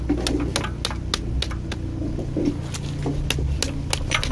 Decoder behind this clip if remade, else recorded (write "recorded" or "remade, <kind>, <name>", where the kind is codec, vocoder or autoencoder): recorded